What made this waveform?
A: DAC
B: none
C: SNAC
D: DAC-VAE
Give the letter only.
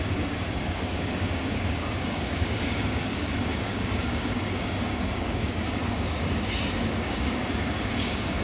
A